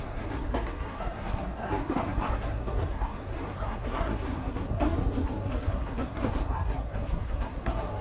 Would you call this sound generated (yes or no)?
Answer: yes